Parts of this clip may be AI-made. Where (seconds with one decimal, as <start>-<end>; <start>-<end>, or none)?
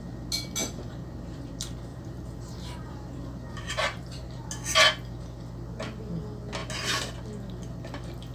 0.6-1.5; 1.9-4.4